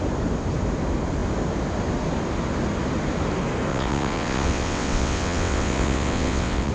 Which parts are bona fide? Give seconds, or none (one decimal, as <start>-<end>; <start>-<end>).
0.0-3.7